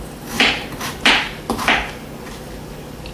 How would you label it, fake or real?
real